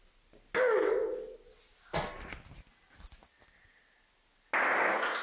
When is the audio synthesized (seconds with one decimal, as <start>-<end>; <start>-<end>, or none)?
none